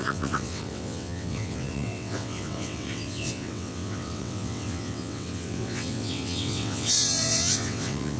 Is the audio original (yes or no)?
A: no